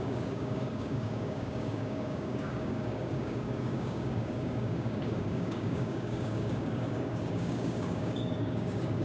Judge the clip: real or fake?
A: fake